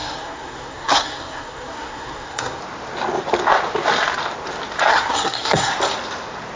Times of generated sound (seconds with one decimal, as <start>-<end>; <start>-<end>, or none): 0.0-2.6; 4.9-5.7